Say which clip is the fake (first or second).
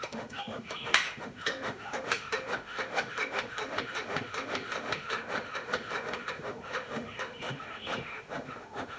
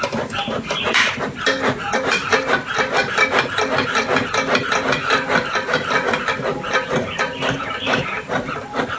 first